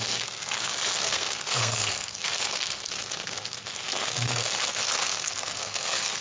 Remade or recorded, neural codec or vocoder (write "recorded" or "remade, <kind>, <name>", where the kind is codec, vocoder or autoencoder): remade, codec, SNAC